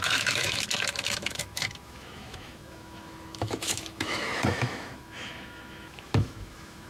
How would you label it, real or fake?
fake